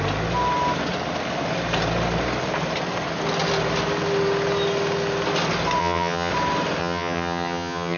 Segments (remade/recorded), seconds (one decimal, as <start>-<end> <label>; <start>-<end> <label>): 0.0-5.8 recorded; 5.8-6.3 remade; 6.3-6.8 recorded; 6.8-8.0 remade